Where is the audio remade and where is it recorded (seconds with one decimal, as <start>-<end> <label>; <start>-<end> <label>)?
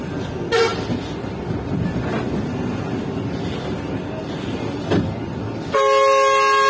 0.0-6.7 recorded